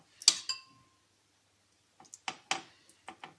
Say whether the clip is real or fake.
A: real